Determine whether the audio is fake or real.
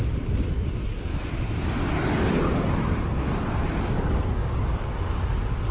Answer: real